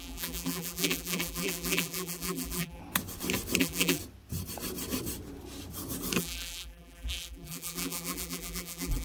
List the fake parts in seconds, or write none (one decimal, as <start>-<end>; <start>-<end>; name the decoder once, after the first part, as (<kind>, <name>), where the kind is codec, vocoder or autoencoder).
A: 0.0-2.8 (vocoder, BigVGAN v2); 3.6-4.0; 6.2-9.0